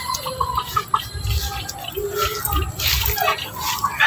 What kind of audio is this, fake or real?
real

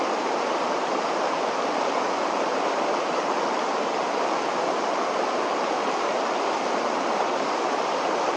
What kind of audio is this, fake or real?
fake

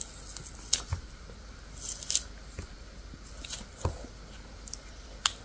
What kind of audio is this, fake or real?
real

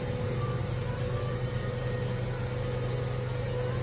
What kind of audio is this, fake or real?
real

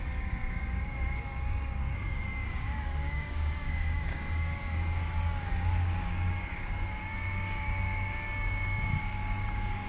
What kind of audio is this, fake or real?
fake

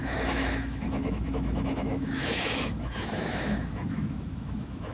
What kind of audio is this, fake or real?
fake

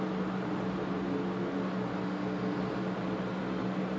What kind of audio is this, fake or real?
real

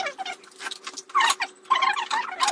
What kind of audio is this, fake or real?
real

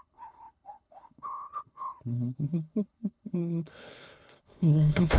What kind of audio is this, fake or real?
fake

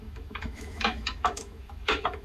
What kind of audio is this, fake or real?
fake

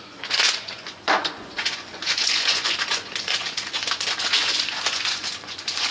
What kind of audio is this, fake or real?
fake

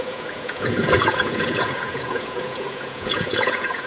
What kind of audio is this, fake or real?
fake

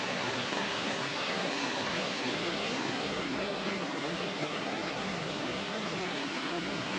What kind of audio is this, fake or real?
fake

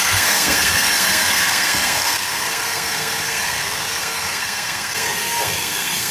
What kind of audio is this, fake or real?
fake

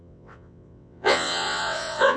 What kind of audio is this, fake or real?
fake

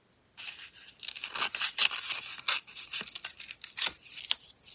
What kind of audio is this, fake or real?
real